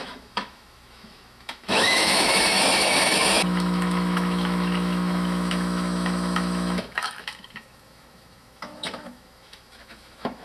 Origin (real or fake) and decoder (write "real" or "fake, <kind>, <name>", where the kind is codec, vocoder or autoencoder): fake, autoencoder, DAC-VAE